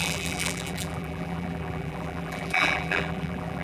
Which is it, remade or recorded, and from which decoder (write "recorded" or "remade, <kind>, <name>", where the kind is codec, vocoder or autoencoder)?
remade, vocoder, BigVGAN v2